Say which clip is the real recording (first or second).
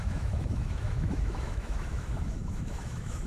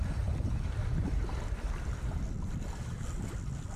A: second